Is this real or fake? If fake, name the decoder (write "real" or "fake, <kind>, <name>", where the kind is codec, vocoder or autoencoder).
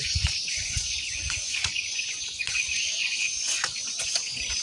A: fake, vocoder, Vocos